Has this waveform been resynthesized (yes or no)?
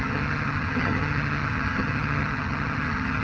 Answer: yes